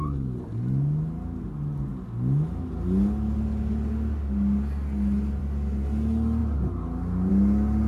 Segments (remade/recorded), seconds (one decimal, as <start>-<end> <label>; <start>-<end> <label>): 0.0-7.9 recorded